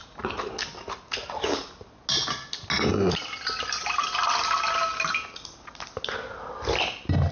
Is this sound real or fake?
real